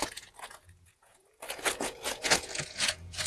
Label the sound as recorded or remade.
remade